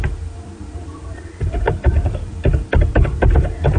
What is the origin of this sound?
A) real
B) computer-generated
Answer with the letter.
B